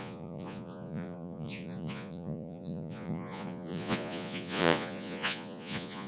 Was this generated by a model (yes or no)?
yes